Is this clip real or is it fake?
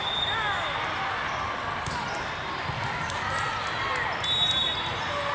real